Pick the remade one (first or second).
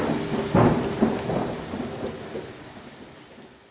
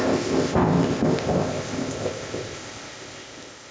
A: second